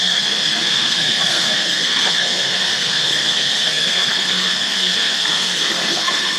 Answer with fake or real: fake